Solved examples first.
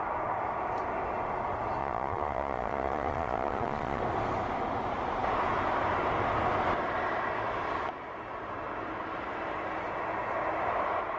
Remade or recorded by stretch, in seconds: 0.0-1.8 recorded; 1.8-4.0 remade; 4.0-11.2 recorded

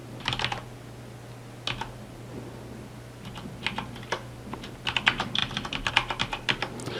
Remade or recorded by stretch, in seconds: 0.0-7.0 recorded